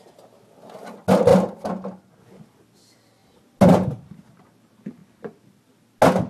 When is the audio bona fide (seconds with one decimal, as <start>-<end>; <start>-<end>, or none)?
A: 0.0-6.3